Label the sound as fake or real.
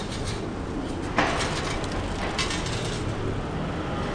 real